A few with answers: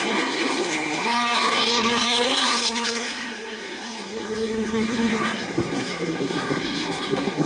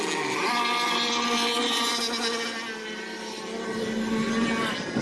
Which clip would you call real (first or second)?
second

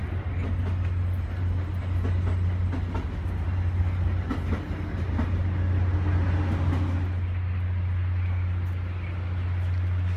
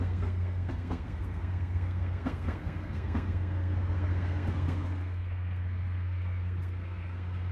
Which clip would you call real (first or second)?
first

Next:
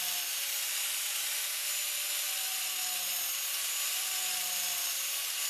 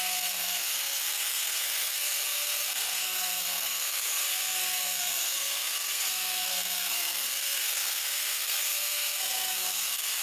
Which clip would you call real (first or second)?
first